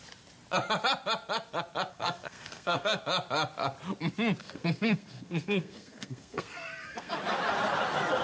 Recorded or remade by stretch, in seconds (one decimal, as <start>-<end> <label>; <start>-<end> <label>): 0.0-1.9 recorded; 1.9-3.0 remade; 3.0-4.4 recorded; 4.4-7.2 remade; 7.2-8.2 recorded

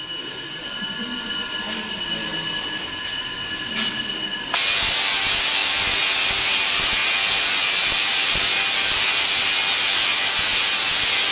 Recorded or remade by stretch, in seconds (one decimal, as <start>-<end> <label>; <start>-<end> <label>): 0.0-11.3 recorded

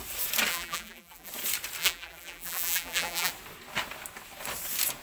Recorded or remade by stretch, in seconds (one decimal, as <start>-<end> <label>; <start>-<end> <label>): 0.0-0.5 recorded; 0.5-1.3 remade; 1.3-1.8 recorded; 1.8-3.3 remade; 3.3-5.0 recorded

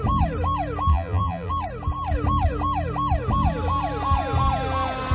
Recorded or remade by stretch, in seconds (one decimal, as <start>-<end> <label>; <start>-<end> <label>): 0.0-0.9 recorded; 0.9-1.5 remade; 1.5-5.1 recorded